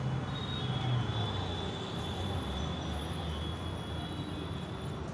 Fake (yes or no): no